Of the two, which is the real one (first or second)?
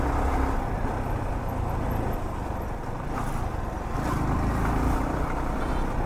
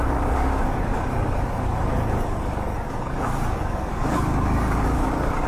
first